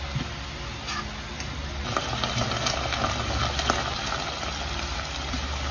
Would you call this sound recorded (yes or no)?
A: yes